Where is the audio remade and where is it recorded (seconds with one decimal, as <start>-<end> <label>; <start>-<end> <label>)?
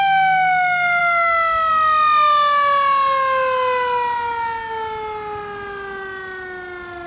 0.0-7.1 recorded